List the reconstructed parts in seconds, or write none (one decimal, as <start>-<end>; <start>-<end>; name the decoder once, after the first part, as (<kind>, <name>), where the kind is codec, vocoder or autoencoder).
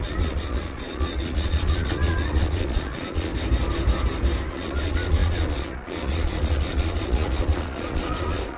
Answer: 0.0-3.3 (vocoder, Vocos); 4.5-8.6